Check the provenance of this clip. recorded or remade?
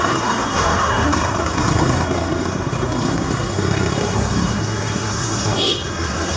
remade